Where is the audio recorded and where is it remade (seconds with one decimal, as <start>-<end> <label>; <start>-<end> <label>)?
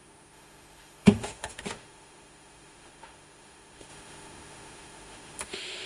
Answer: 0.0-5.9 remade